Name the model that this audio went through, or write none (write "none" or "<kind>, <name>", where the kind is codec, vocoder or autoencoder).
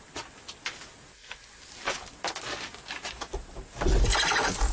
none